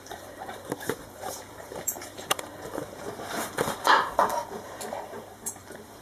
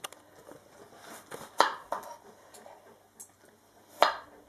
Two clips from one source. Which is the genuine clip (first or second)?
second